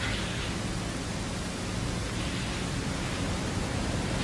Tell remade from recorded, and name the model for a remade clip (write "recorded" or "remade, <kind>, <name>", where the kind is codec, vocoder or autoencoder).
recorded